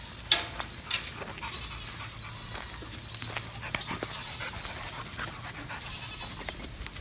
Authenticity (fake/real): real